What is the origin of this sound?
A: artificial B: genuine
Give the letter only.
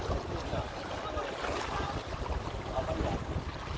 B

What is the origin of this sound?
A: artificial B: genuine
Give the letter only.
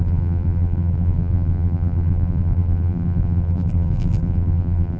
A